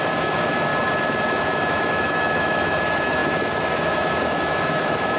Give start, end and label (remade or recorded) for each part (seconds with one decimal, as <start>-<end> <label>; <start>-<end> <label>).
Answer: 0.0-0.7 remade; 0.7-1.3 recorded; 1.3-5.2 remade